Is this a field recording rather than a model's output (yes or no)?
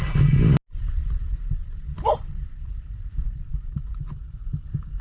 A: yes